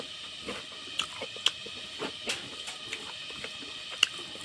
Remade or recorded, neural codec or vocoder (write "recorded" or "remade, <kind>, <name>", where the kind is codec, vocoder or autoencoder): recorded